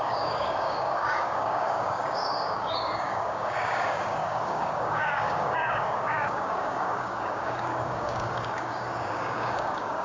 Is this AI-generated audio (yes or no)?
yes